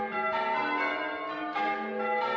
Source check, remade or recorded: recorded